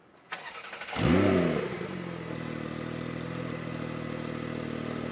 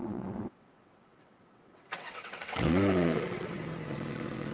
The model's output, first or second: second